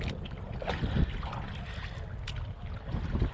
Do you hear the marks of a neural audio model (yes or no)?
no